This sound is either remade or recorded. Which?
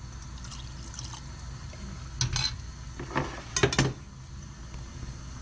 recorded